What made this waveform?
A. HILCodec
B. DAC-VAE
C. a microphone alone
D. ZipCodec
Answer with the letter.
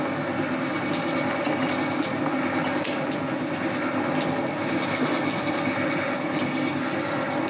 C